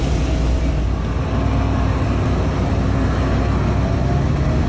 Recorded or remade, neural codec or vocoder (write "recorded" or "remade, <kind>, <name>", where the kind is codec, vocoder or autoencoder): recorded